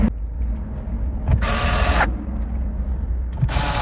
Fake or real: real